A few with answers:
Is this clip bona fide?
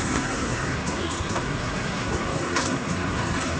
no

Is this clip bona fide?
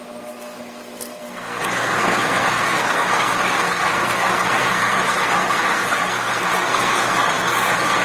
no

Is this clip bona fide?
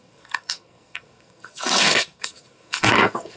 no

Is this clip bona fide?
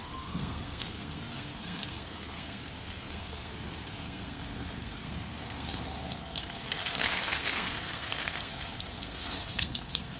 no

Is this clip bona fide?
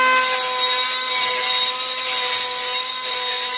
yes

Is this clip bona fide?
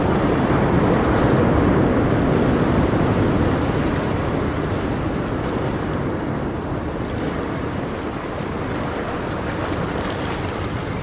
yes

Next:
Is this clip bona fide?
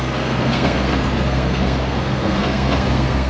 no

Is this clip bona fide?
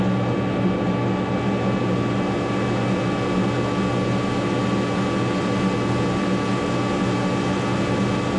yes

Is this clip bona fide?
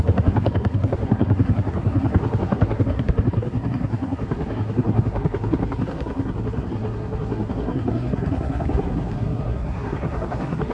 no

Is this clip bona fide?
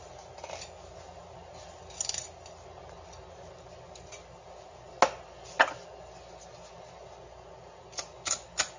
yes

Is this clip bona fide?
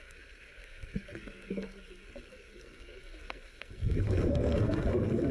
no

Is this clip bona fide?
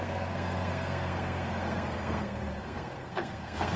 no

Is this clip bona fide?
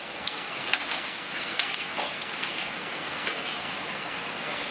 no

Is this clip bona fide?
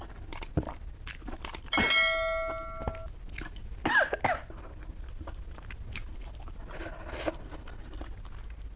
yes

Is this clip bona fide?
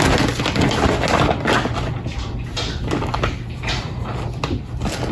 yes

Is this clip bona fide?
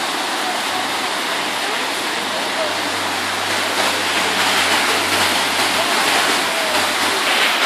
yes